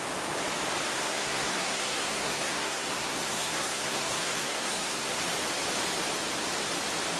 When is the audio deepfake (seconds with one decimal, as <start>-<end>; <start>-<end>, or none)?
0.9-5.2